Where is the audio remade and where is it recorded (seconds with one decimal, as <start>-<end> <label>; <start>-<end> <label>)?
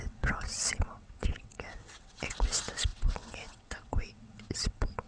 0.0-5.1 remade